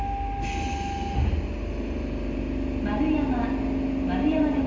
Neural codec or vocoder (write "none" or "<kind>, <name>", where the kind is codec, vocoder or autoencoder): none